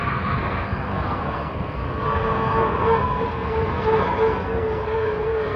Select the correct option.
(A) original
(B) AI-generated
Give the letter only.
B